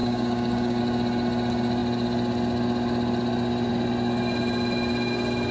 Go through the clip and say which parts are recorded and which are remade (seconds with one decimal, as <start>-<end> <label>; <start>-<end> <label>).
0.0-0.8 remade; 0.8-5.5 recorded